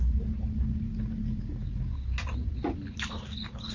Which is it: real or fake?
real